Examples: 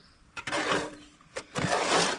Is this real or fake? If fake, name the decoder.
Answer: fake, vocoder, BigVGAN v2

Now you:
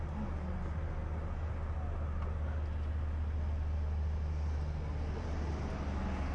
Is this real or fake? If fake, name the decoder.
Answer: real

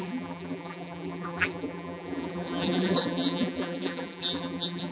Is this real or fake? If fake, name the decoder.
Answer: fake, vocoder, BigVGAN v2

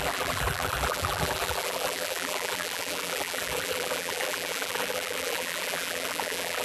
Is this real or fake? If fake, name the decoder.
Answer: fake, vocoder, BigVGAN v2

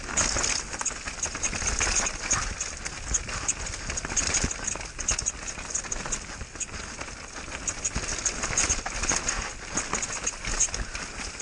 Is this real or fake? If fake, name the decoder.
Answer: real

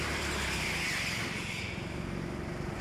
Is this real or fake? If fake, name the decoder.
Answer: real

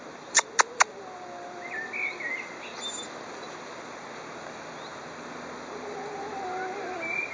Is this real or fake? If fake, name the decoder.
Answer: real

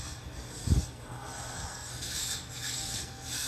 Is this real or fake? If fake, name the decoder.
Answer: fake, codec, SNAC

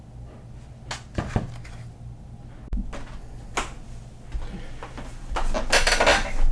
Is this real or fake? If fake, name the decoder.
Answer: real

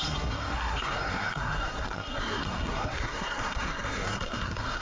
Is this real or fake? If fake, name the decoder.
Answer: fake, codec, SNAC